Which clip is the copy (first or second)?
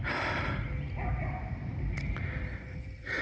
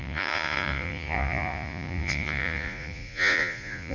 second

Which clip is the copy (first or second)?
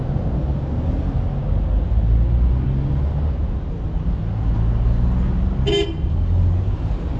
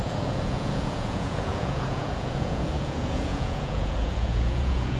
second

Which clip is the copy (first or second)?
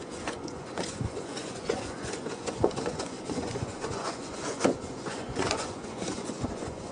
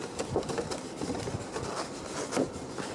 first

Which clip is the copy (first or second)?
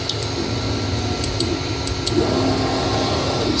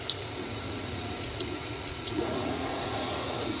second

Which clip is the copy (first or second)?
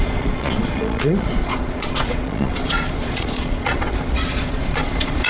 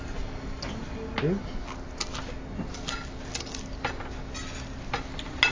first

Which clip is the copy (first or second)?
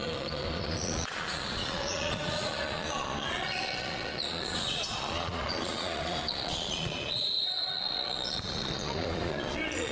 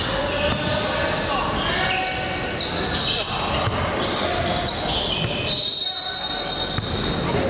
first